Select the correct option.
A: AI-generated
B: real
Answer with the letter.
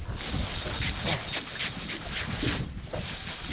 B